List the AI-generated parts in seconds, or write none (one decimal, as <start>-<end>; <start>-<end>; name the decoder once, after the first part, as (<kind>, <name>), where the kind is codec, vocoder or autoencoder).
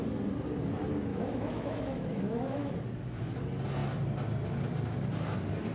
1.1-2.7 (autoencoder, DAC-VAE)